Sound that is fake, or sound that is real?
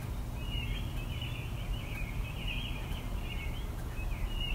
real